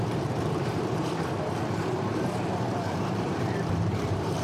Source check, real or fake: fake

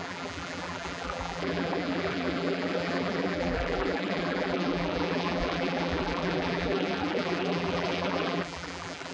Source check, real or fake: fake